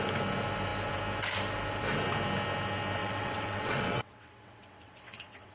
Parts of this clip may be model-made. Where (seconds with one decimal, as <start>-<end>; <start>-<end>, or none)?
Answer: 3.0-5.5